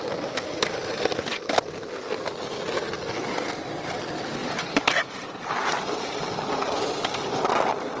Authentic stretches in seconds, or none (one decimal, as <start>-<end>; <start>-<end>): 0.0-4.4; 6.1-8.0